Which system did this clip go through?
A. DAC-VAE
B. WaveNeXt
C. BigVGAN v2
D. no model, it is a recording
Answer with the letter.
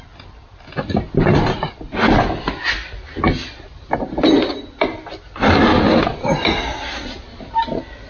D